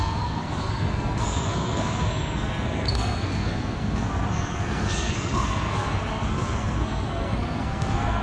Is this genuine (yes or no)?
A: no